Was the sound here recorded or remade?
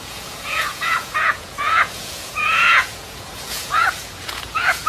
remade